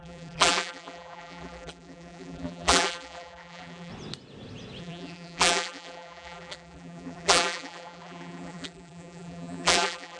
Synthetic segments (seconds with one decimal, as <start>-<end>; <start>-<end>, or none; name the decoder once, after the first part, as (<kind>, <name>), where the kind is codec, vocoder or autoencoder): 0.0-3.9 (vocoder, BigVGAN v2); 4.8-10.2